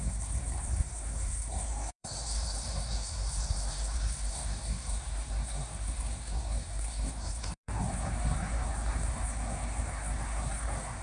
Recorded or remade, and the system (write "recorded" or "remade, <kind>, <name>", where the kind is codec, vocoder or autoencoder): remade, codec, SNAC